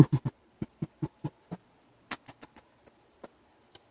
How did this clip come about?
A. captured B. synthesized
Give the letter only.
A